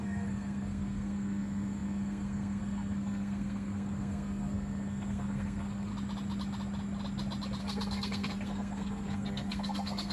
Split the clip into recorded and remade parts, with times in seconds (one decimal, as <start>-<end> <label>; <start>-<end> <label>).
0.0-5.9 remade; 5.9-7.6 recorded; 7.6-10.1 remade